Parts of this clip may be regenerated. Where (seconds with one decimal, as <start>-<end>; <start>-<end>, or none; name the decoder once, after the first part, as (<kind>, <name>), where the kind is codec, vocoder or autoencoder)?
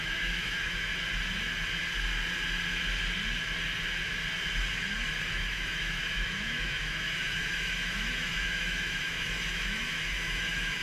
0.0-0.9 (autoencoder, DAC-VAE); 5.3-10.8